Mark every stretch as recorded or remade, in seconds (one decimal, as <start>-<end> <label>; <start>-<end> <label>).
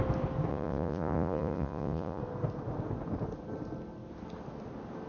0.0-0.5 recorded; 0.5-2.2 remade; 2.2-5.1 recorded